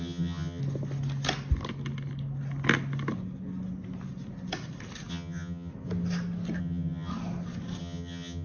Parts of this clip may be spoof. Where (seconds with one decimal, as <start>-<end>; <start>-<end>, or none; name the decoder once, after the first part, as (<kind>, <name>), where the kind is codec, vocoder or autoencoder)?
0.0-0.6 (vocoder, HiFi-GAN); 5.1-5.7; 6.6-7.1; 7.8-8.4